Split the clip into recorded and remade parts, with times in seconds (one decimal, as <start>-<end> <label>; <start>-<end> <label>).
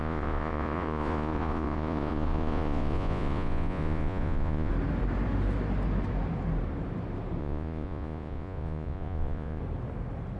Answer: 0.0-4.7 remade; 4.7-7.4 recorded; 7.4-9.6 remade; 9.6-10.4 recorded